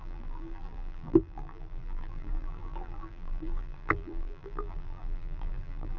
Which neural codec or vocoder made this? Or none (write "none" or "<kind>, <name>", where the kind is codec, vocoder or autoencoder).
vocoder, BigVGAN v2